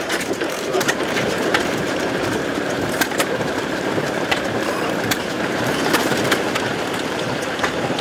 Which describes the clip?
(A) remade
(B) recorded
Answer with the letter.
A